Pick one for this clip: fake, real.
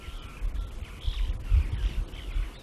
real